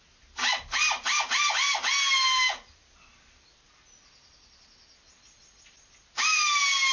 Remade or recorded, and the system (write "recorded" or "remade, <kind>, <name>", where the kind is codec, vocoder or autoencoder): recorded